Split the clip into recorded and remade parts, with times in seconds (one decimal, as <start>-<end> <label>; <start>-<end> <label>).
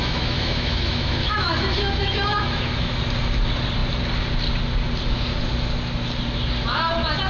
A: 0.0-2.9 remade; 2.9-7.3 recorded